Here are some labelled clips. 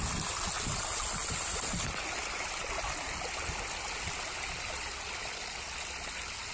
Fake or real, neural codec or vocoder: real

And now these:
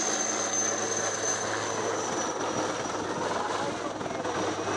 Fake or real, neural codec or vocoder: real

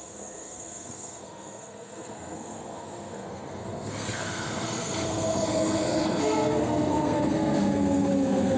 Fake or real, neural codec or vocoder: fake, codec, SNAC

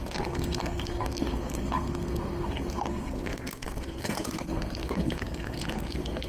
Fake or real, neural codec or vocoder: fake, codec, SNAC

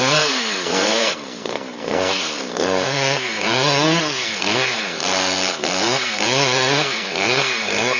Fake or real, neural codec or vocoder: fake, codec, SNAC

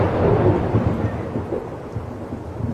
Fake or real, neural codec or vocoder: real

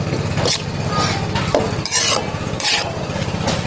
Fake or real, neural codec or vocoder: real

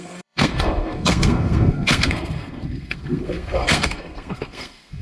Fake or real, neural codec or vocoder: fake, codec, SNAC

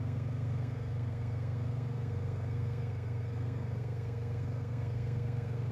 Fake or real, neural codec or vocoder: fake, codec, SNAC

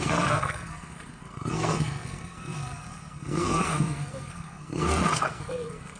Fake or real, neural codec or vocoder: fake, codec, SNAC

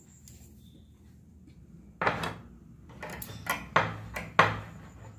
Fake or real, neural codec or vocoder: real